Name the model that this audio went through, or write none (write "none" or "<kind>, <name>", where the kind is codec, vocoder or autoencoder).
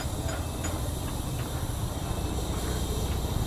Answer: none